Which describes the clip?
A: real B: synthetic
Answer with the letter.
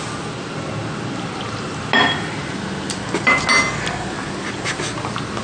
A